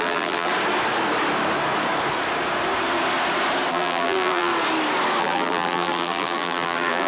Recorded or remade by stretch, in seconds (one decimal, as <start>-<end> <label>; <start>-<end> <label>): 0.0-0.5 remade; 0.5-3.7 recorded; 3.7-4.5 remade; 4.5-5.2 recorded; 5.2-7.1 remade